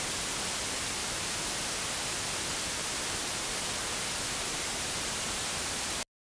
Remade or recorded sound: recorded